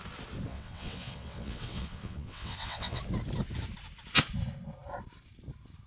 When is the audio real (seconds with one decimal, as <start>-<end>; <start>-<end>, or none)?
0.0-0.5; 3.0-5.9